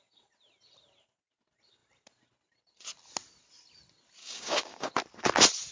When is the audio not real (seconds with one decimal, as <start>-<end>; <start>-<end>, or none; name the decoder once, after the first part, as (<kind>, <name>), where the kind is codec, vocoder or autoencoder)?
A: 4.2-4.9 (codec, DAC)